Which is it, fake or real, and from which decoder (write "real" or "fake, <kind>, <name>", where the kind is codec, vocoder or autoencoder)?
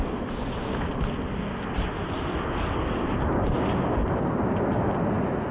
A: real